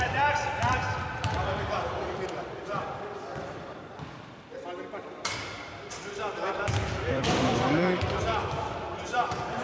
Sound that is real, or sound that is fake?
fake